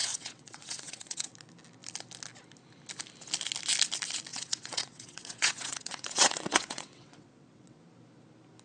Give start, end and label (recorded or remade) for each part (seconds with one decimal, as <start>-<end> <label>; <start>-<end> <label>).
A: 0.0-1.3 remade; 1.3-4.3 recorded; 4.3-7.8 remade; 7.8-8.6 recorded

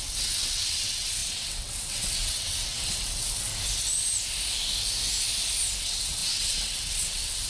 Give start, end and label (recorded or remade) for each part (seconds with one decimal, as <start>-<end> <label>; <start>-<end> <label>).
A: 0.0-3.5 remade; 3.5-5.8 recorded; 5.8-7.5 remade

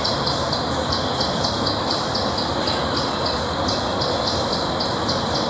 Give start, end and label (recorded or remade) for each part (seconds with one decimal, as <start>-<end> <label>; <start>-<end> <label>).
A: 0.0-5.5 recorded

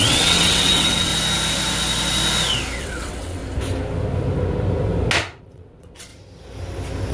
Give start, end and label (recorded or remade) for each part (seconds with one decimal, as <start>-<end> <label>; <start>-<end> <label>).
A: 0.0-1.1 remade; 1.1-2.8 recorded; 2.8-3.4 remade; 3.4-5.4 recorded; 5.4-6.1 remade; 6.1-7.1 recorded

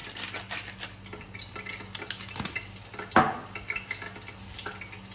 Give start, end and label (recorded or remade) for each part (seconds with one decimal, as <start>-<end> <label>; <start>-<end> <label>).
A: 0.0-5.1 recorded